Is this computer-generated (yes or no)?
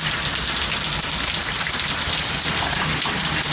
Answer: no